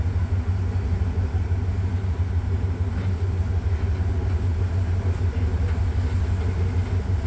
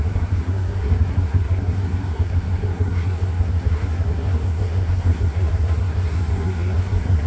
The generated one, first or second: second